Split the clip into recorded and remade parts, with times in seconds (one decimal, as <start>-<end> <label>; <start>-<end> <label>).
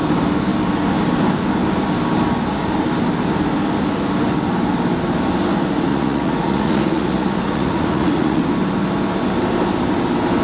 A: 0.0-5.9 recorded; 5.9-8.4 remade; 8.4-10.4 recorded